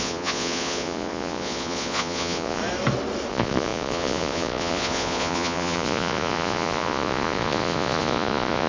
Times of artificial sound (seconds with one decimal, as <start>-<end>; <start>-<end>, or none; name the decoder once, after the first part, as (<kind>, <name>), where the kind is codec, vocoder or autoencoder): 0.0-2.6 (vocoder, Vocos); 3.3-8.7